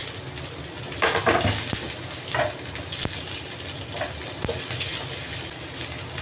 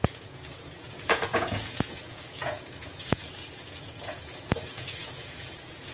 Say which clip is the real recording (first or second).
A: first